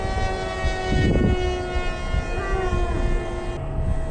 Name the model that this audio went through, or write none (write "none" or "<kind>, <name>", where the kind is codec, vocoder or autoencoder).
none